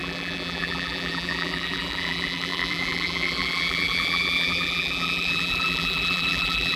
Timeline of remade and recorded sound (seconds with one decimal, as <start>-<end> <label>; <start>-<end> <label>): 0.0-6.8 remade